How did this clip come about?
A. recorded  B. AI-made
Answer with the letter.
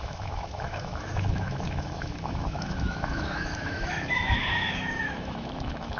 B